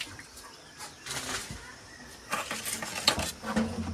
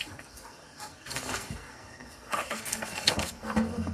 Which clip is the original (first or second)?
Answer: first